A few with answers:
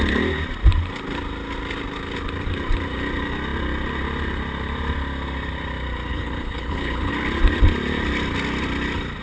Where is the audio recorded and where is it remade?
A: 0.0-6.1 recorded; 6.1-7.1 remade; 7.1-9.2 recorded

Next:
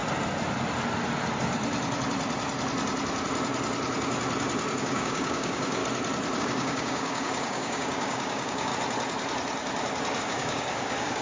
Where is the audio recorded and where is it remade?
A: 0.0-4.8 recorded; 4.8-5.8 remade; 5.8-6.4 recorded; 6.4-8.7 remade; 8.7-10.2 recorded; 10.2-11.2 remade

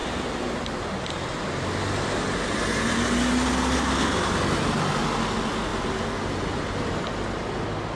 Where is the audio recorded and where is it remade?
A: 0.0-7.9 recorded

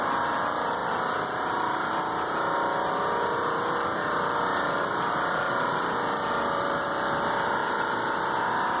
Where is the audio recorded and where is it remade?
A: 0.0-8.8 remade

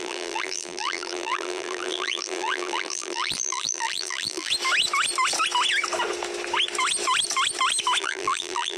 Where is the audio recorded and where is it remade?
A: 0.0-4.5 remade; 4.5-8.0 recorded; 8.0-8.8 remade